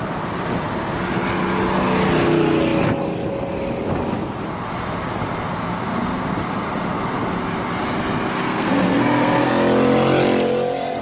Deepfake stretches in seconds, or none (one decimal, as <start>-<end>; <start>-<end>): 8.3-9.5